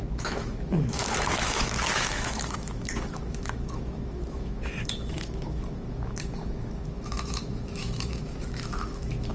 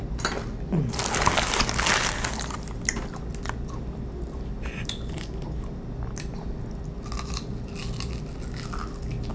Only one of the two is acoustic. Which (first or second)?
second